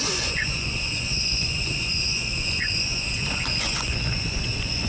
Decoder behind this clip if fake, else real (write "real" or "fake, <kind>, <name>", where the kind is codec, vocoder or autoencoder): fake, vocoder, Vocos